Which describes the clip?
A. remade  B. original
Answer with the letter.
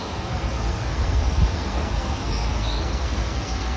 A